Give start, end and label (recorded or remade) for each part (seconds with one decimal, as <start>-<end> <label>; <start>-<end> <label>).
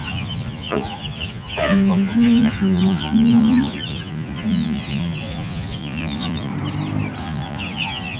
0.0-6.5 remade; 6.5-7.2 recorded; 7.2-8.2 remade